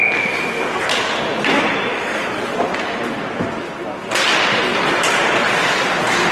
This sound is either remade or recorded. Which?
recorded